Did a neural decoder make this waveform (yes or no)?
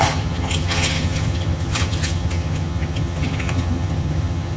yes